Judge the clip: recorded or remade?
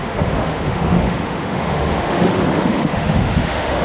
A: remade